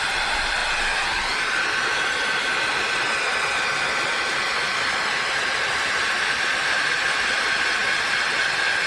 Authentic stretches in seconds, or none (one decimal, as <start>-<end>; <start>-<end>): 0.0-8.9